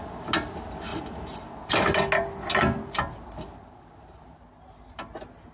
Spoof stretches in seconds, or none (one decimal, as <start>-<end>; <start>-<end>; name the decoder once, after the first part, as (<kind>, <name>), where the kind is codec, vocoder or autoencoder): none